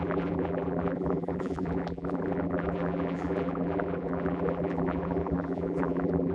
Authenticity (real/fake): fake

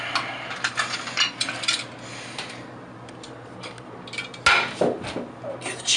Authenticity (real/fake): real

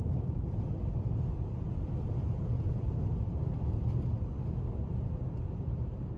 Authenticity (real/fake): fake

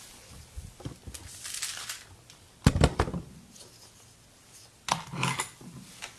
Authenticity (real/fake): real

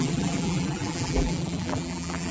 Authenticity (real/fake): fake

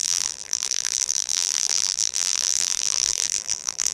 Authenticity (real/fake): fake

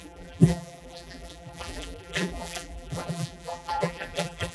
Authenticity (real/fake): fake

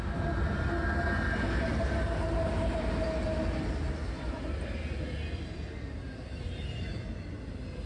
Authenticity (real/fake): real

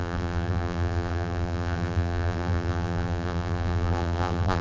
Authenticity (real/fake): fake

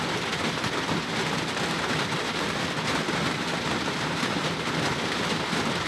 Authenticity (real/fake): fake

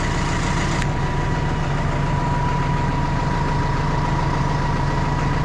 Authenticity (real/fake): fake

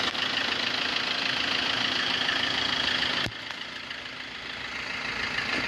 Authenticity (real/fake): real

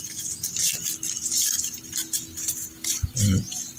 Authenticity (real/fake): real